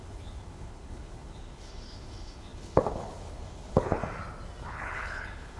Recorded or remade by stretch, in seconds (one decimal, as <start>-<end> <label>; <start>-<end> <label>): 0.0-4.0 remade; 4.0-4.6 recorded; 4.6-5.6 remade